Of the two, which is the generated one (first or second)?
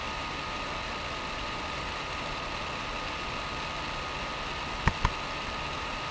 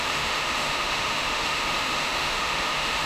second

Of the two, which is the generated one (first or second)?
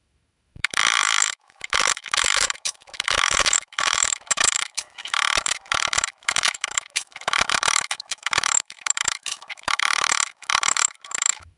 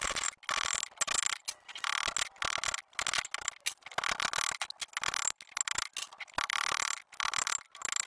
first